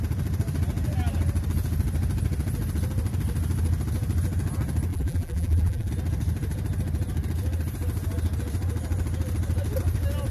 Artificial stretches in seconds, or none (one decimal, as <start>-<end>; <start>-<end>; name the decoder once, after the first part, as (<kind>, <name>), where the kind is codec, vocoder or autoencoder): 4.9-5.9 (vocoder, BigVGAN v2)